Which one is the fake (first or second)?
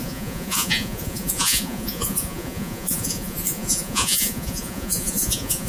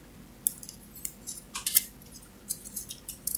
first